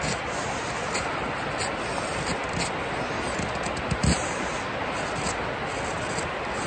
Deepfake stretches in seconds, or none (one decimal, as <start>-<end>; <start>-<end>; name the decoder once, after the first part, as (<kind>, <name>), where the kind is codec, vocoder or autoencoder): none